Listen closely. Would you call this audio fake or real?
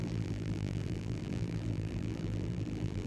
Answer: fake